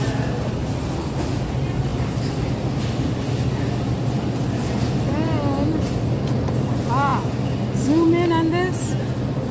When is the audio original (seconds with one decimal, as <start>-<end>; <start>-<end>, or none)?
0.0-9.5